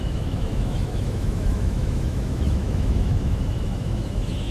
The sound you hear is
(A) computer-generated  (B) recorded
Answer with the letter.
A